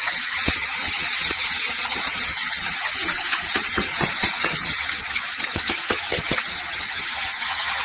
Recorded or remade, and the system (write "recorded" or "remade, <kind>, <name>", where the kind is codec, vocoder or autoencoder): remade, vocoder, HiFi-GAN